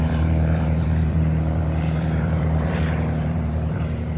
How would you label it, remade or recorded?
remade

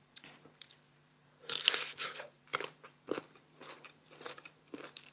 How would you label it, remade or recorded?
remade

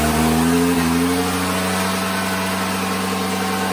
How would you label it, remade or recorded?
recorded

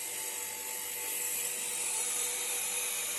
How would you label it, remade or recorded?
recorded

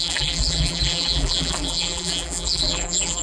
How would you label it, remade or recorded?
remade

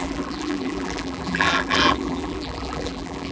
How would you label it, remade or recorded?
remade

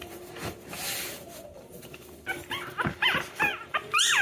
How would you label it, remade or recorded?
remade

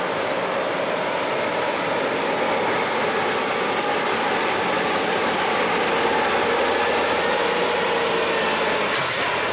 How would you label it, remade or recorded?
recorded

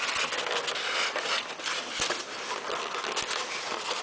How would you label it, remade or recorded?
recorded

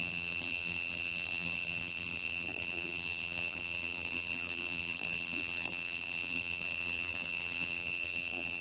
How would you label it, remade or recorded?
remade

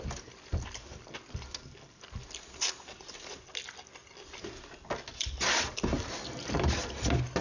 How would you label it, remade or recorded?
recorded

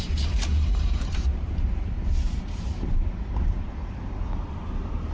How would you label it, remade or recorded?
remade